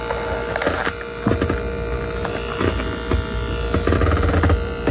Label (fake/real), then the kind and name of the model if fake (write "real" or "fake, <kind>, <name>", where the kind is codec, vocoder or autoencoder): real